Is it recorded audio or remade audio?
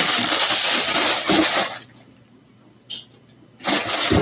recorded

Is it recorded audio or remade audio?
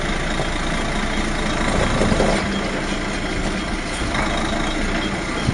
recorded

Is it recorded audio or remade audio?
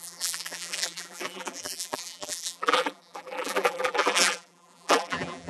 remade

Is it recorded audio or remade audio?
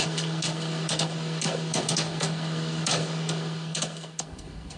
remade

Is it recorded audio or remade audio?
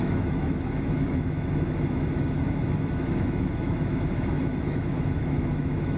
remade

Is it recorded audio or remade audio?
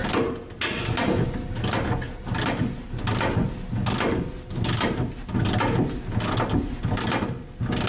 recorded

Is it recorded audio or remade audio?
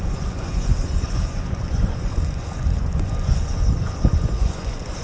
remade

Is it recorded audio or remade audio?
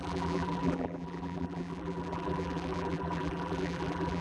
remade